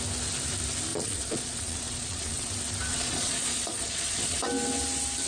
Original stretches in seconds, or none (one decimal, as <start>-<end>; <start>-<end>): 0.0-0.9; 2.5-2.9; 4.4-5.3